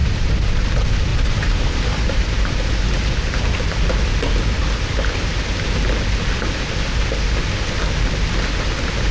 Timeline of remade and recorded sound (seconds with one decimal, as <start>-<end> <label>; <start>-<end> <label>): 0.0-0.6 remade; 0.6-1.1 recorded; 1.1-2.5 remade; 2.5-9.1 recorded